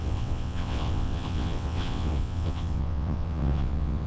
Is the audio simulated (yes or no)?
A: yes